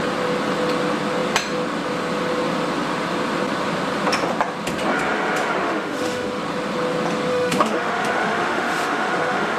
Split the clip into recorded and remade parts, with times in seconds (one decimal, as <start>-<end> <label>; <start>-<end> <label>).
0.0-5.6 recorded; 5.6-6.4 remade; 6.4-7.3 recorded; 7.3-9.6 remade